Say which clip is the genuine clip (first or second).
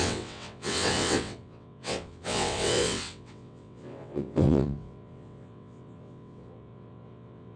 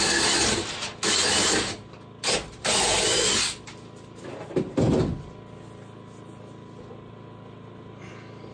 second